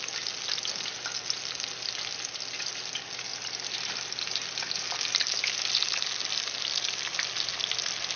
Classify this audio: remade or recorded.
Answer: recorded